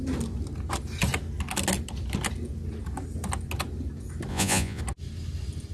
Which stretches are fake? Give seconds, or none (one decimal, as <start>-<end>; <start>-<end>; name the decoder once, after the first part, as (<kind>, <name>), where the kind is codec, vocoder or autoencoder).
4.3-4.8 (vocoder, Vocos)